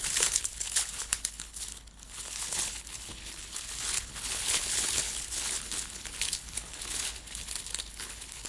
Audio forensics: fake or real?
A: fake